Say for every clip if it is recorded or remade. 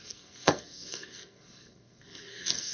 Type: remade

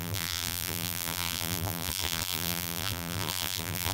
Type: remade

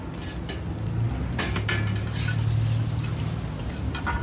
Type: recorded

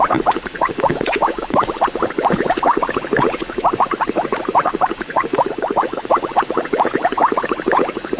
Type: remade